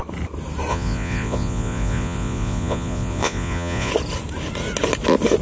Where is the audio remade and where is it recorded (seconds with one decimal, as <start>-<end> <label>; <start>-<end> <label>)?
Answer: 0.0-0.7 recorded; 0.7-3.9 remade; 3.9-5.4 recorded